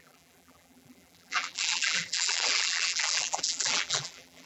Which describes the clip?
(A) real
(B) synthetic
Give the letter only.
B